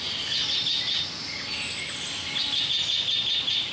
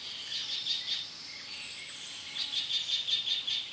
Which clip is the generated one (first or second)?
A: second